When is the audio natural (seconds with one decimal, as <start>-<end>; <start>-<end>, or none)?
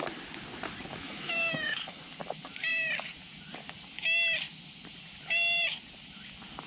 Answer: 0.0-0.9; 2.0-6.7